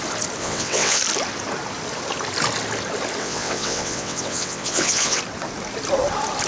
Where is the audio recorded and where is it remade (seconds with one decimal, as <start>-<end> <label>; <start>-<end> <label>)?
0.0-0.4 recorded; 0.4-1.0 remade; 1.0-3.2 recorded; 3.2-5.2 remade; 5.2-6.5 recorded